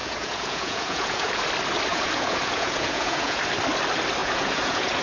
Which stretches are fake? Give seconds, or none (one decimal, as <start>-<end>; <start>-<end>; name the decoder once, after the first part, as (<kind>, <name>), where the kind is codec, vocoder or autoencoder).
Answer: 0.0-1.4 (vocoder, Vocos); 1.9-3.4; 4.2-5.0